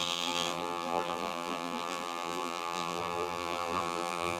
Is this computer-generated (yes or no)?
yes